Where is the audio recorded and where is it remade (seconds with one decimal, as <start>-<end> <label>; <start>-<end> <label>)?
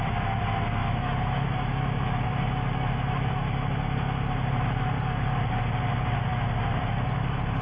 0.0-0.8 recorded; 0.8-3.8 remade; 3.8-7.6 recorded